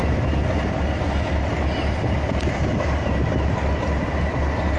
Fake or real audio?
real